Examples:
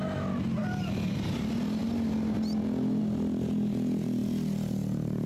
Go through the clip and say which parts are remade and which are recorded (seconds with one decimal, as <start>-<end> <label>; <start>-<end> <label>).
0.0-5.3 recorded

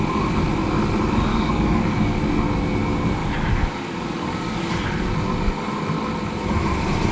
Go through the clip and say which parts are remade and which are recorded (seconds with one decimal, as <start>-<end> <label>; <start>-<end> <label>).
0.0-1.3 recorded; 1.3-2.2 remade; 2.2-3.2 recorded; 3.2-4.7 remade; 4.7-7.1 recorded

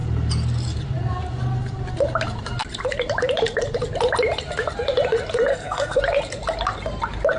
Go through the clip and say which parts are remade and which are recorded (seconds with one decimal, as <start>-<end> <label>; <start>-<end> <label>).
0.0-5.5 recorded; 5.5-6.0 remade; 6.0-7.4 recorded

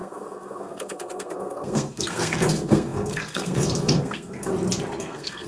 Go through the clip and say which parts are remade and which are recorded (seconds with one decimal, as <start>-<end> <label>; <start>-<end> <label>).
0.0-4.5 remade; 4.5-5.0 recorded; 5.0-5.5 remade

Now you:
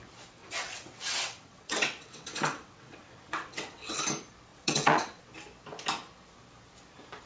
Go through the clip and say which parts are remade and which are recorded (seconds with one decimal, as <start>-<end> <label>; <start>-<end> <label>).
0.0-0.4 recorded; 0.4-4.0 remade; 4.0-4.5 recorded; 4.5-5.2 remade; 5.2-7.3 recorded

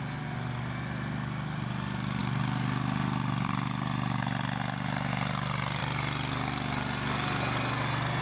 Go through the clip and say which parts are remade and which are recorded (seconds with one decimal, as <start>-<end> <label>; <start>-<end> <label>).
0.0-8.2 recorded

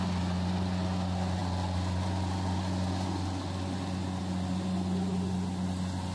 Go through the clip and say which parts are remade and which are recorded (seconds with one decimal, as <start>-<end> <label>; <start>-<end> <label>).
0.0-6.1 recorded